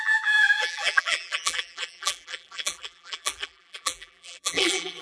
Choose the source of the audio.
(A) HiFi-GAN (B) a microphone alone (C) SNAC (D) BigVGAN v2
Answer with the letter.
D